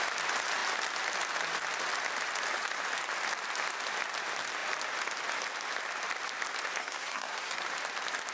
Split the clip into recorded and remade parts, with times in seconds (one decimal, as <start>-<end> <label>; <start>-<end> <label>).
0.0-6.8 recorded; 6.8-7.6 remade; 7.6-8.3 recorded